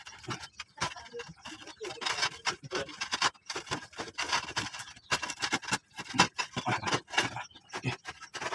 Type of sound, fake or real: real